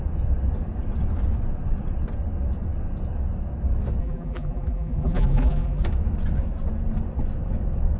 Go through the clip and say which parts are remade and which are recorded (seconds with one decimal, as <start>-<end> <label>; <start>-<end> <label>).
0.0-4.0 recorded; 4.0-5.8 remade; 5.8-8.0 recorded

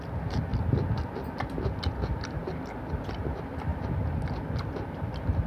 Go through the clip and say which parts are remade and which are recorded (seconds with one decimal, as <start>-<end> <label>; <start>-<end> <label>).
0.0-5.5 recorded